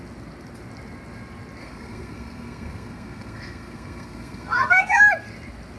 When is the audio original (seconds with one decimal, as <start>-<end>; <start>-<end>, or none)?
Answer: 0.0-1.6; 5.0-5.8